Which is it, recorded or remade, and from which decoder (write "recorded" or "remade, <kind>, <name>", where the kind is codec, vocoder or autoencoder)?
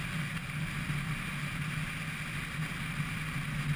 recorded